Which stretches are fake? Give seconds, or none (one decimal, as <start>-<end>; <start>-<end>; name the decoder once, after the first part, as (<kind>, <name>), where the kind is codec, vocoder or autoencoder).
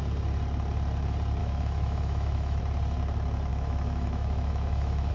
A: 1.4-2.6 (autoencoder, DAC-VAE); 3.5-5.1